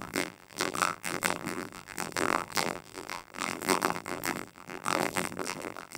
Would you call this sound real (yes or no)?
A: no